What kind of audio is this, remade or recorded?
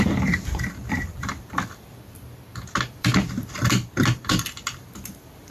remade